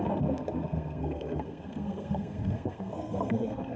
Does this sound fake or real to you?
fake